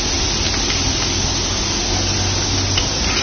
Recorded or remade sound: recorded